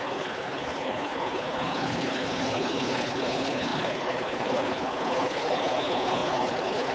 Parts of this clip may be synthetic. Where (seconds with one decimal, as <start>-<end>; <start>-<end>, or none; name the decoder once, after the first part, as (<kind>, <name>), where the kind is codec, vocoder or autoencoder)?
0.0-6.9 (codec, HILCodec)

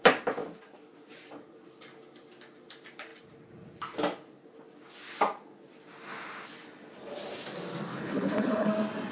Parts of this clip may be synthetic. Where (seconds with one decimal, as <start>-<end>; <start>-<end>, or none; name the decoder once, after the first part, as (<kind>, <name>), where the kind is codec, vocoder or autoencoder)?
7.9-8.7 (codec, HILCodec)

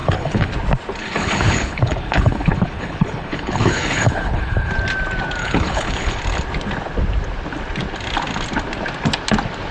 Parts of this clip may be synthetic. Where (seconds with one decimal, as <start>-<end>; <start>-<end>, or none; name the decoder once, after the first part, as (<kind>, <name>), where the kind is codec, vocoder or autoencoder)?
0.0-0.5 (codec, HILCodec); 1.0-4.7; 5.4-6.2

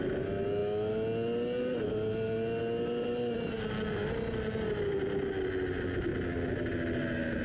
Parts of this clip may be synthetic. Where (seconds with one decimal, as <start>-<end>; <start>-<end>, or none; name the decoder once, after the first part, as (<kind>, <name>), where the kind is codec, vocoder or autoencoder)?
none

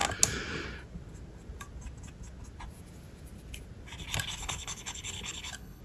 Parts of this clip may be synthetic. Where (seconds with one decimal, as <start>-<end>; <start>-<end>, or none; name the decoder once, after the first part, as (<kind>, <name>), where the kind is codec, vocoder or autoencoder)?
4.4-5.8 (codec, HILCodec)

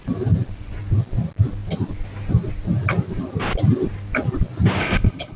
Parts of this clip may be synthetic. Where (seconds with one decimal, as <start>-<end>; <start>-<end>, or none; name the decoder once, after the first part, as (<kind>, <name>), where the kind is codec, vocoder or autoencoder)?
4.8-5.4 (codec, HILCodec)